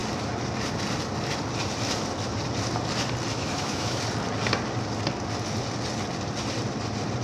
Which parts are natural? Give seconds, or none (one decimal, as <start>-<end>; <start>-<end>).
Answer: 0.0-3.3; 4.0-7.2

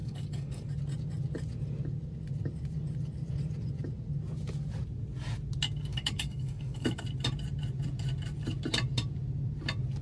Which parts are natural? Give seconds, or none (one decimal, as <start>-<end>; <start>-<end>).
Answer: 0.7-5.9; 7.0-10.0

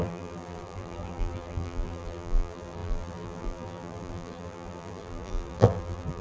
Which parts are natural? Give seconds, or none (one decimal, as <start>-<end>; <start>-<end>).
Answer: none

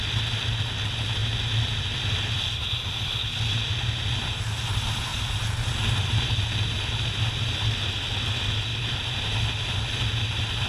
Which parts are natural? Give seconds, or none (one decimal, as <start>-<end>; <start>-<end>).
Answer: 0.0-5.1; 6.2-8.7; 9.4-10.7

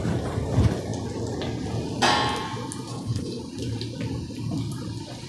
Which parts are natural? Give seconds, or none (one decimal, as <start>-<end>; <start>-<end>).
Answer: 0.0-2.9; 3.4-5.3

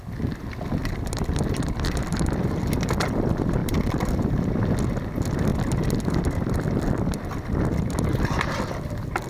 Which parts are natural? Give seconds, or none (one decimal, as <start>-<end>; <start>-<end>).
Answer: 0.0-0.8; 2.0-3.6; 4.1-5.5; 7.3-9.3